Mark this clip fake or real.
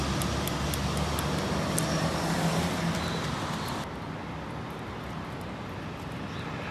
real